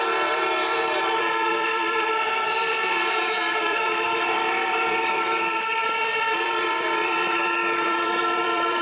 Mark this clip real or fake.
fake